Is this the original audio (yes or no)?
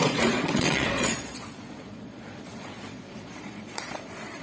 no